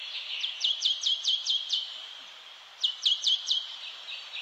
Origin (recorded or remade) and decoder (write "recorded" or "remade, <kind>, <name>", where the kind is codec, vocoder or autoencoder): remade, vocoder, BigVGAN v2